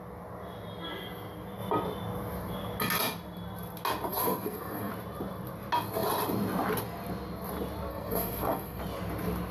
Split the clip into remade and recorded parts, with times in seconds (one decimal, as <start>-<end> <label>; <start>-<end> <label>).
0.0-4.1 recorded; 4.1-4.9 remade; 4.9-7.9 recorded; 7.9-8.8 remade; 8.8-9.5 recorded